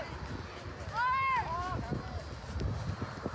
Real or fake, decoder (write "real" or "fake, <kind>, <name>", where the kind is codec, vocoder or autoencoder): real